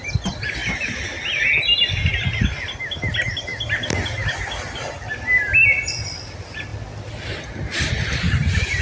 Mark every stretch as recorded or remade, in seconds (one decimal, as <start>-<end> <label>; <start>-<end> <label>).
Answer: 0.0-0.6 remade; 0.6-2.1 recorded; 2.1-3.5 remade; 3.5-5.4 recorded; 5.4-6.7 remade; 6.7-7.4 recorded; 7.4-8.8 remade